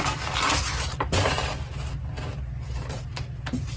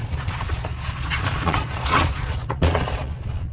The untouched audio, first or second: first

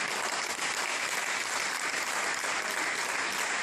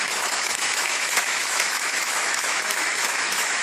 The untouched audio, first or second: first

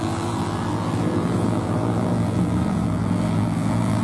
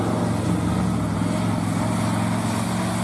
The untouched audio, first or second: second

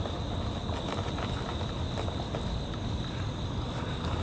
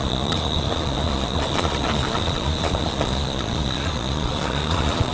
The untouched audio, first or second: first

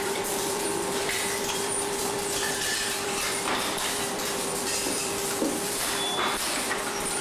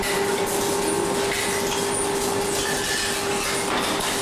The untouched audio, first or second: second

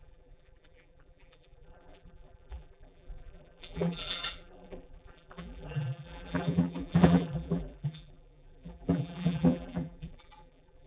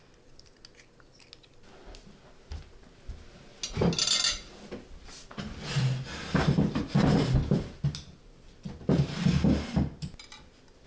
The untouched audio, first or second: second